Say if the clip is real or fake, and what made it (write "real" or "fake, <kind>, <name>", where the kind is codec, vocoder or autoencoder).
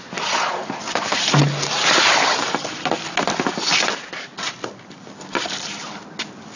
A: real